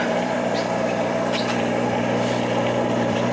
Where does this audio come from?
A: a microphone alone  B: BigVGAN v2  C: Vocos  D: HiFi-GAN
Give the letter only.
B